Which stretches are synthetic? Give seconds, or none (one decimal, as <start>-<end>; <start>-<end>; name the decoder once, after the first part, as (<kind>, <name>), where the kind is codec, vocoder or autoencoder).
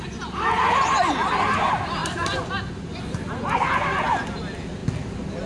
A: none